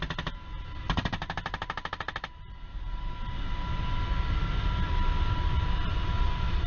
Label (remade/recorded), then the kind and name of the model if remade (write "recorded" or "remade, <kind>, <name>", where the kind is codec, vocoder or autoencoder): recorded